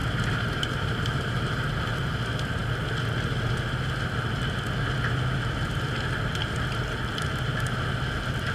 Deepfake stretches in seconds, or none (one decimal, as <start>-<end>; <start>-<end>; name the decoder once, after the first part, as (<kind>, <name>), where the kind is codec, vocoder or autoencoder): 0.0-1.7 (vocoder, BigVGAN v2)